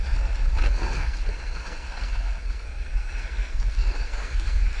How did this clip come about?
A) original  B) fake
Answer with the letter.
B